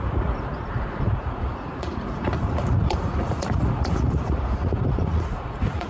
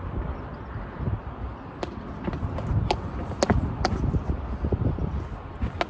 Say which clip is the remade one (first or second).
first